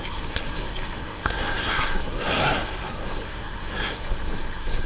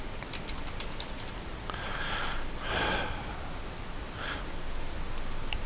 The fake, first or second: first